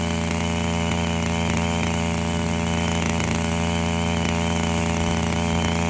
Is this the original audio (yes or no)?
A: yes